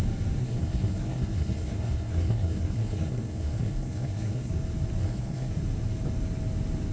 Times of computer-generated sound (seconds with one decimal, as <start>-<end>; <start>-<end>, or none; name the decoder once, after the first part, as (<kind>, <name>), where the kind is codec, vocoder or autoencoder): 0.4-4.5 (codec, SNAC); 5.0-5.5